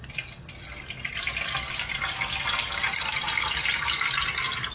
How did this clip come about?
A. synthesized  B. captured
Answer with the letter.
B